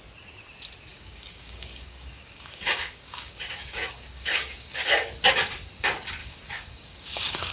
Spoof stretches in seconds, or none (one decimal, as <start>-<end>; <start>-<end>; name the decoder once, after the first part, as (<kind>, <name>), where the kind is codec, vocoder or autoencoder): 0.9-4.9 (codec, DAC); 6.2-7.5